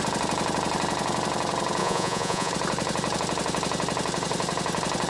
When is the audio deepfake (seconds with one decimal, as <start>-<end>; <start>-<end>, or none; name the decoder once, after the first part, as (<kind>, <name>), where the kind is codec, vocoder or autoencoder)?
1.8-2.5 (vocoder, Vocos)